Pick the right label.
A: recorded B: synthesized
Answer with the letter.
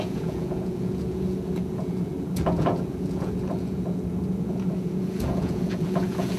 B